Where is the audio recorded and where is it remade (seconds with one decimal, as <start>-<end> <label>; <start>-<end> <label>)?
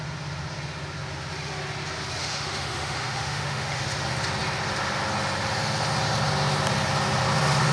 0.0-2.2 recorded; 2.2-3.8 remade; 3.8-7.7 recorded